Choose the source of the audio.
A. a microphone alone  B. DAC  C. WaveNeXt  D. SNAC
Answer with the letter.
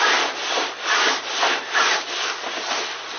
A